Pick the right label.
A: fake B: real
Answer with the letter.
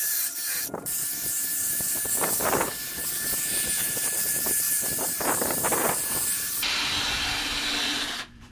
A